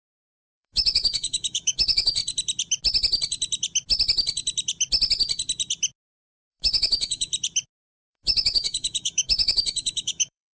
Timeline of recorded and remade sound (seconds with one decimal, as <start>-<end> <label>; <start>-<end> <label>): 0.0-2.2 remade; 2.2-6.5 recorded; 6.5-7.3 remade; 7.3-8.1 recorded; 8.1-10.5 remade